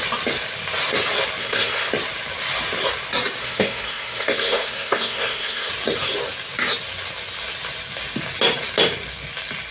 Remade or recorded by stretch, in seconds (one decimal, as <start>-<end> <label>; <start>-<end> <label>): 0.0-1.4 recorded; 1.4-1.9 remade; 1.9-3.4 recorded; 3.4-5.7 remade; 5.7-9.7 recorded